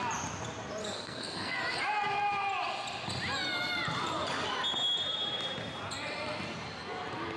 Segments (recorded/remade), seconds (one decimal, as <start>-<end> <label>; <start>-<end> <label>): 0.0-0.8 recorded; 0.8-1.6 remade; 1.6-7.4 recorded